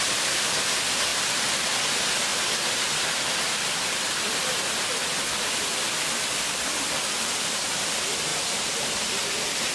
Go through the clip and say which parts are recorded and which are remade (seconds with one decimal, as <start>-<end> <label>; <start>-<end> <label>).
0.0-1.1 recorded; 1.1-1.8 remade; 1.8-2.3 recorded; 2.3-4.4 remade; 4.4-8.3 recorded; 8.3-9.7 remade